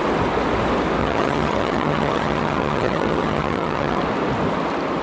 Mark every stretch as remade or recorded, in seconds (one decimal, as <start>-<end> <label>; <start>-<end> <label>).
0.0-1.0 recorded; 1.0-4.0 remade; 4.0-5.0 recorded

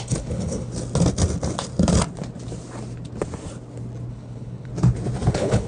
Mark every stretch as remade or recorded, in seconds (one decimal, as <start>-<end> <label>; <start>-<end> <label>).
0.0-0.7 remade; 0.7-4.1 recorded; 4.1-4.7 remade; 4.7-5.3 recorded; 5.3-5.7 remade

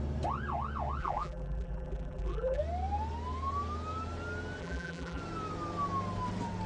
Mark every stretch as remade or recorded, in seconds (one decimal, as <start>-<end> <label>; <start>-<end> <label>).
0.0-1.0 recorded; 1.0-2.6 remade; 2.6-4.6 recorded; 4.6-5.2 remade; 5.2-6.7 recorded

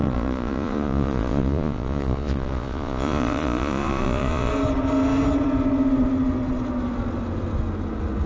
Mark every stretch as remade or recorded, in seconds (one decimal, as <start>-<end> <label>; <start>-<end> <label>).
0.0-4.5 remade; 4.5-8.3 recorded

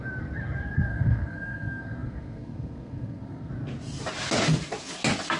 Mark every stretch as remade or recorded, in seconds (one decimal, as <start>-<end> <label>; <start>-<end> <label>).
0.0-0.9 recorded; 0.9-3.5 remade; 3.5-5.4 recorded